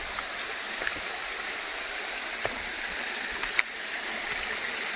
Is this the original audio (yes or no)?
yes